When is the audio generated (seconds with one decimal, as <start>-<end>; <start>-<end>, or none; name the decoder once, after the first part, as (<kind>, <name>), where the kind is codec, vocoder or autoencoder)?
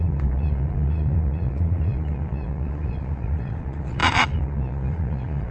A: 0.0-5.5 (vocoder, Vocos)